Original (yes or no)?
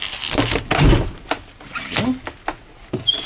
yes